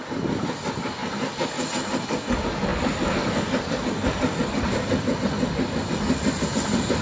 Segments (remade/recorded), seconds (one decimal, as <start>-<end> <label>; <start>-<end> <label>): 0.0-7.0 recorded